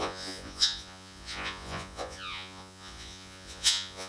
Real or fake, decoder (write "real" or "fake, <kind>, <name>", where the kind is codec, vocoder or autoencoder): fake, vocoder, Vocos